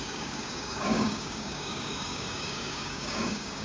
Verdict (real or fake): fake